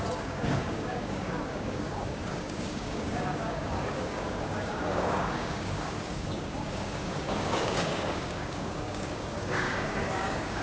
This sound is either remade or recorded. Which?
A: remade